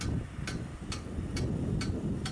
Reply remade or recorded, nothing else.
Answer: recorded